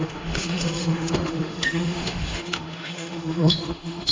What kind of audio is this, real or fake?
fake